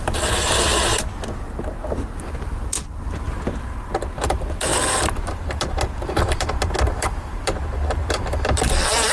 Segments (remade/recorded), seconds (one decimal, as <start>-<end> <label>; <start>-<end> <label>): 0.0-0.9 remade; 0.9-2.4 recorded; 2.4-9.1 remade